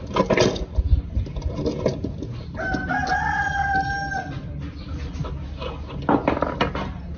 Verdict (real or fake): real